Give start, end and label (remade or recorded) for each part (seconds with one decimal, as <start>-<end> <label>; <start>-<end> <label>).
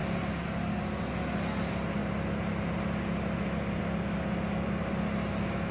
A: 0.0-5.7 recorded